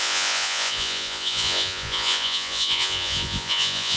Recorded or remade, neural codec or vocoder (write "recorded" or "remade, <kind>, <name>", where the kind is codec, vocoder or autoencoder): remade, vocoder, Vocos